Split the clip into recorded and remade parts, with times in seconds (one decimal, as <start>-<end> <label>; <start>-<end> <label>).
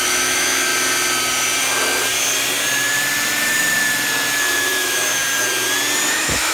0.0-0.7 remade; 0.7-4.3 recorded; 4.3-5.2 remade; 5.2-6.1 recorded; 6.1-6.5 remade